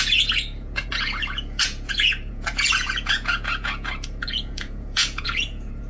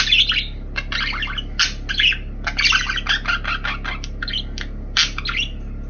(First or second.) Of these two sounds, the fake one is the first